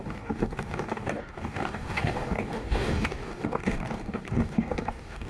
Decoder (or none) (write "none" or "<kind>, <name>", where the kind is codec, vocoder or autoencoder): codec, DAC